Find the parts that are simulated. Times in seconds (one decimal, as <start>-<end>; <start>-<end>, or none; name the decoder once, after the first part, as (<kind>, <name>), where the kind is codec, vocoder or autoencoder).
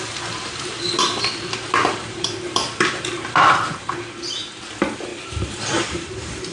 1.8-3.9 (vocoder, BigVGAN v2); 5.1-6.1